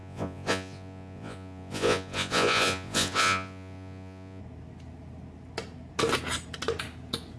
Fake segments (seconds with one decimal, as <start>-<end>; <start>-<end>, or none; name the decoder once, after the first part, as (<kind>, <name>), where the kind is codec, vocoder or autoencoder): 0.0-4.4 (vocoder, Vocos)